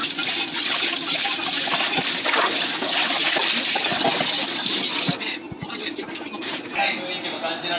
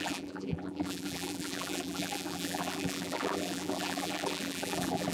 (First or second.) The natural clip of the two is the first